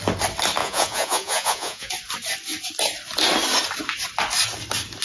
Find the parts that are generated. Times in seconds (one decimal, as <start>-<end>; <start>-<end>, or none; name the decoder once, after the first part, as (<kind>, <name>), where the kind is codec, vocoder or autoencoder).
0.6-1.9 (vocoder, Vocos)